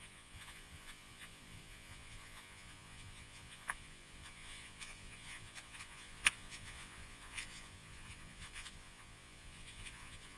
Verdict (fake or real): fake